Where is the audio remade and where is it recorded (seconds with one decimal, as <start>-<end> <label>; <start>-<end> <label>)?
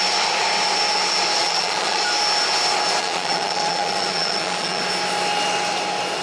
0.0-1.4 recorded; 1.4-2.0 remade; 2.0-3.0 recorded; 3.0-4.8 remade; 4.8-6.2 recorded